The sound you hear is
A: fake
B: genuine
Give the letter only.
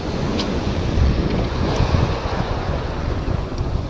A